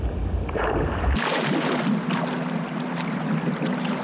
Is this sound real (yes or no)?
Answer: yes